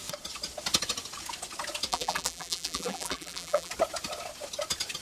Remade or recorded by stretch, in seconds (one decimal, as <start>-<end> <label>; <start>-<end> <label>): 0.0-1.9 recorded; 1.9-3.7 remade; 3.7-5.0 recorded